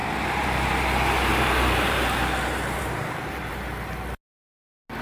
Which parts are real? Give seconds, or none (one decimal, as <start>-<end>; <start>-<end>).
0.7-1.3; 3.5-5.0